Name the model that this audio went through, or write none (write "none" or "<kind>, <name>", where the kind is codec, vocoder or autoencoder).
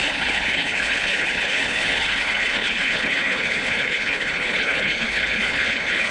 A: codec, HILCodec